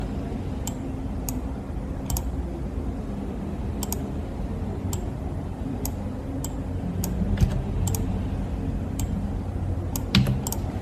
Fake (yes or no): no